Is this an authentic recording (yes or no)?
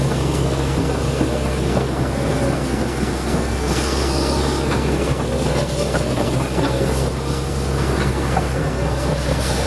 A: no